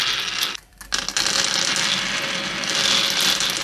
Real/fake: real